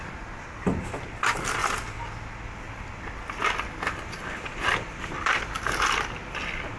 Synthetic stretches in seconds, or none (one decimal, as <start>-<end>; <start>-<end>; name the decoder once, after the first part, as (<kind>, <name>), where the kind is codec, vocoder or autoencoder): none